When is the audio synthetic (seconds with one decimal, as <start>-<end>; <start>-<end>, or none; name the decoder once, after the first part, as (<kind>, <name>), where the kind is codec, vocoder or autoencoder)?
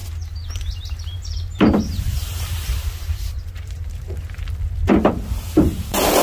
0.8-4.8 (vocoder, BigVGAN v2); 5.3-6.2